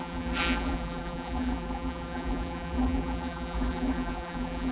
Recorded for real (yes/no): no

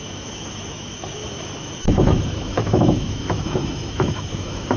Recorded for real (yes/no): no